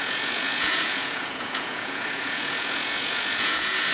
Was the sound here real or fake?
fake